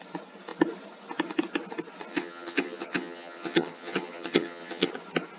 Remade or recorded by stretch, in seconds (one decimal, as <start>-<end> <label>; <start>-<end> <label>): 0.0-2.1 recorded; 2.1-4.9 remade; 4.9-5.4 recorded